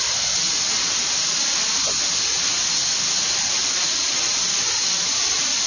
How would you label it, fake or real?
real